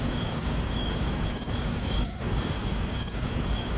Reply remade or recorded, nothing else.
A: remade